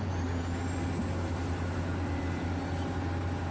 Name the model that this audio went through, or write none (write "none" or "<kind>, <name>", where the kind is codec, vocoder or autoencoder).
none